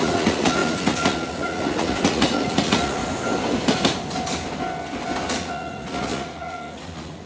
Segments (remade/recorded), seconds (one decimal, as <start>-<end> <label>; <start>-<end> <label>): 0.0-3.0 remade; 3.0-5.3 recorded; 5.3-7.3 remade